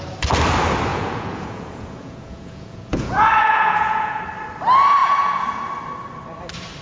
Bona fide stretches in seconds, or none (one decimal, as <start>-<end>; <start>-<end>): 0.0-0.9; 4.2-5.0; 5.6-6.8